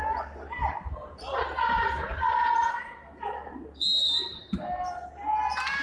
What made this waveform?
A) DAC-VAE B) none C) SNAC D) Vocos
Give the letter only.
B